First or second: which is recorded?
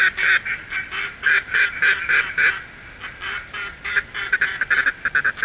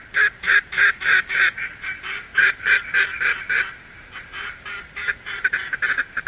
first